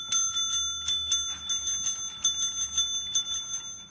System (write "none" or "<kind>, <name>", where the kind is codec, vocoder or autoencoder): none